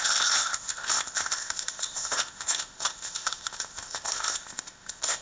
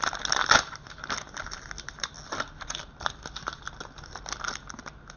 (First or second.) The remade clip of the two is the first